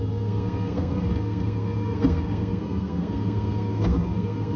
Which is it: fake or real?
fake